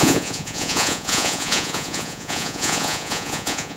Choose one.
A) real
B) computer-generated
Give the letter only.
B